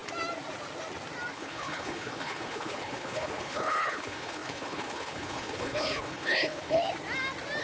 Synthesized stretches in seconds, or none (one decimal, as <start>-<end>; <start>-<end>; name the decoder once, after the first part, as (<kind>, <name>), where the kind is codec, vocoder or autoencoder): 1.3-6.8 (codec, HILCodec)